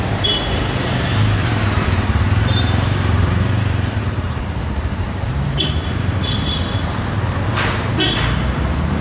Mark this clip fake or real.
fake